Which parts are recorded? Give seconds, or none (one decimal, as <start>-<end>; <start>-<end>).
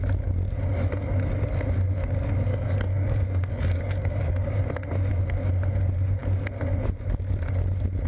0.0-2.5; 4.6-8.1